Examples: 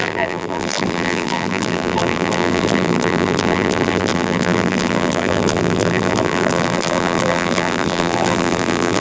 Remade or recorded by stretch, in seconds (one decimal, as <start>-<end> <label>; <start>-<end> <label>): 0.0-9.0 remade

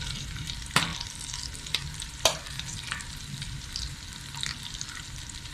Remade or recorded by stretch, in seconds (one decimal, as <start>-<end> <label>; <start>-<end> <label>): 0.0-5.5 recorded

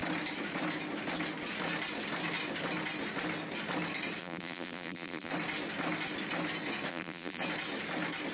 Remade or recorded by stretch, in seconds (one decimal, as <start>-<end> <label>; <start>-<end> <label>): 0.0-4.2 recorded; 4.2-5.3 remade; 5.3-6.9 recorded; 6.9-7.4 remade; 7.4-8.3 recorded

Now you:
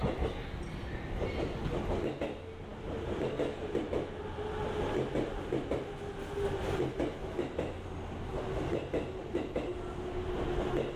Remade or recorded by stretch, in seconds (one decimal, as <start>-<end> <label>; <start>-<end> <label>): 0.0-2.7 recorded; 2.7-4.8 remade; 4.8-11.0 recorded